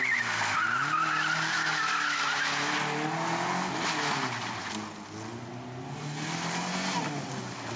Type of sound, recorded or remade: recorded